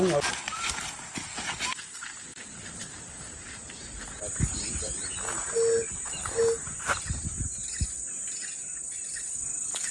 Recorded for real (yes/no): yes